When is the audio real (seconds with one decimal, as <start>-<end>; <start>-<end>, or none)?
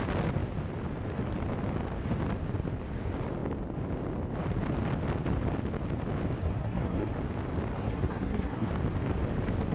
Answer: 0.0-6.4; 7.1-7.8; 8.7-9.7